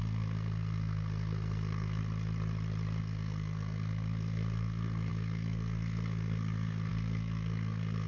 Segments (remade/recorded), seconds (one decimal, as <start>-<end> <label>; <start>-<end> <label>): 0.0-2.0 remade; 2.0-3.0 recorded; 3.0-8.1 remade